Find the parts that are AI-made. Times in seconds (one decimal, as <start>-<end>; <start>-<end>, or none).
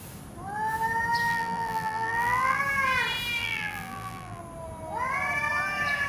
1.3-2.6; 3.4-4.4